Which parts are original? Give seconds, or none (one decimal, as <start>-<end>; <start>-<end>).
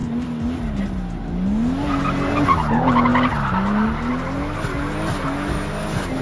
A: 0.0-6.2